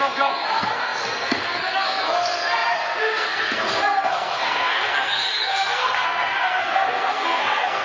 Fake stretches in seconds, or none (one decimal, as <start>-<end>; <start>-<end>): 0.0-7.8